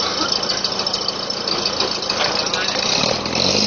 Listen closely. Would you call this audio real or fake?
real